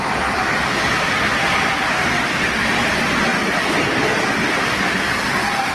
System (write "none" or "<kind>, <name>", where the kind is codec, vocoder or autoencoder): none